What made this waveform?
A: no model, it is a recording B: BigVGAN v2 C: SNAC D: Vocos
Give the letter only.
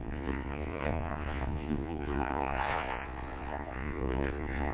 D